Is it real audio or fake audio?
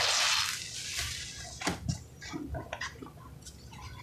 real